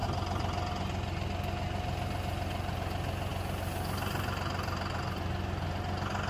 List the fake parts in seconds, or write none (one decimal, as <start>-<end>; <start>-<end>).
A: none